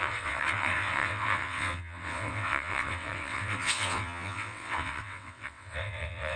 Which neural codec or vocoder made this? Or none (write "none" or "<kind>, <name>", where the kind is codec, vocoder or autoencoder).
vocoder, WaveNeXt